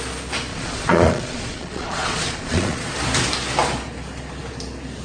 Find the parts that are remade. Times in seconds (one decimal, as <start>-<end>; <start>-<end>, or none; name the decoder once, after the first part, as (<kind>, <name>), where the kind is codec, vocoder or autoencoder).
0.5-2.9 (vocoder, Vocos)